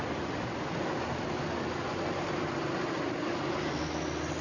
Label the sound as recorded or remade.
recorded